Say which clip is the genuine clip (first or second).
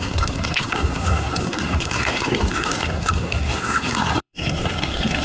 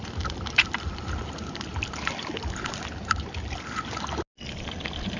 second